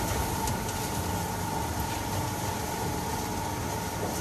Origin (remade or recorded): recorded